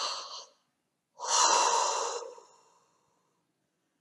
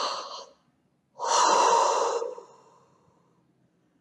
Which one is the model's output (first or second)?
first